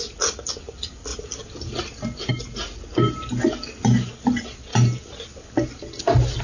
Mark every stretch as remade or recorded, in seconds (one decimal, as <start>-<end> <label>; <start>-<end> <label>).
0.0-6.4 recorded